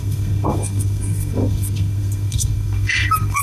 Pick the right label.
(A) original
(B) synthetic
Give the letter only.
B